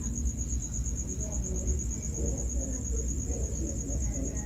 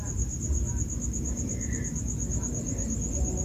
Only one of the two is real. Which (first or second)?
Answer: first